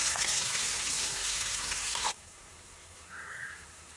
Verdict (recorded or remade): remade